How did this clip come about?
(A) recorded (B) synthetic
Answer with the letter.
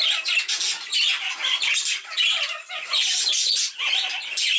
A